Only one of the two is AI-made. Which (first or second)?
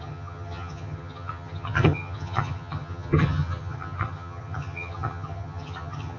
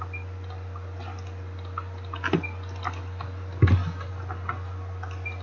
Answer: first